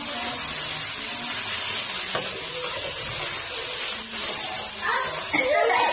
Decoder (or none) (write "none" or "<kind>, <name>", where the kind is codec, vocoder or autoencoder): none